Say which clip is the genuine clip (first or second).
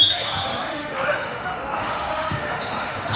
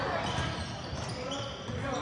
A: second